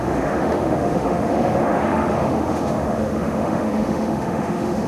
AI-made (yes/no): yes